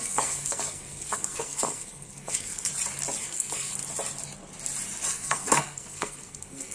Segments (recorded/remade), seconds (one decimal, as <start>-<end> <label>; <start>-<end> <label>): 0.0-2.7 remade; 2.7-3.2 recorded; 3.2-3.7 remade; 3.7-5.1 recorded; 5.1-6.7 remade